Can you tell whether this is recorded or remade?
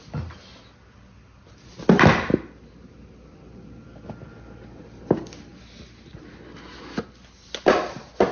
recorded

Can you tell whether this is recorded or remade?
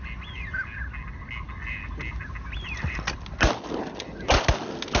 recorded